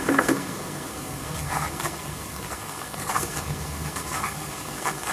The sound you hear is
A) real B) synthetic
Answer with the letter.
B